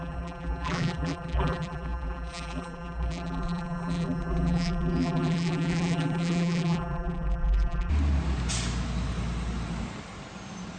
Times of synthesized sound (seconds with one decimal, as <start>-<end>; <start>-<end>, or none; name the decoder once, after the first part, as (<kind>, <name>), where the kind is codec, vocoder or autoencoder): 0.0-7.9 (vocoder, BigVGAN v2)